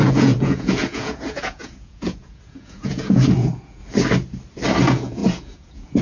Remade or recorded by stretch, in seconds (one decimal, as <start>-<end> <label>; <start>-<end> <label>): 0.0-3.8 remade; 3.8-4.8 recorded; 4.8-6.0 remade